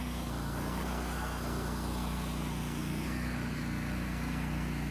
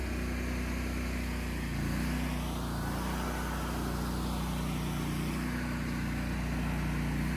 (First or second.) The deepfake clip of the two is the first